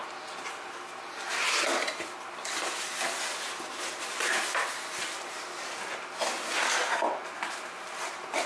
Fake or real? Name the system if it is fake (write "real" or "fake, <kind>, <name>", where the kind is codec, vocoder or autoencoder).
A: real